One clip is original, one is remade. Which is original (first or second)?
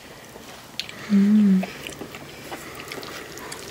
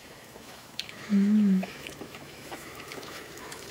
first